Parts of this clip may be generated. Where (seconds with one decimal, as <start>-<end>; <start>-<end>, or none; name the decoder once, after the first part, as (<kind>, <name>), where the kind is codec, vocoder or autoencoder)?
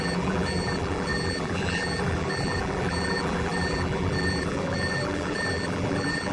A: 0.0-6.3 (vocoder, BigVGAN v2)